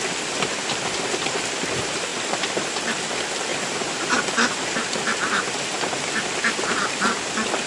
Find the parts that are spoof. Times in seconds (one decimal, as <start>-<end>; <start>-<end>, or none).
3.5-5.4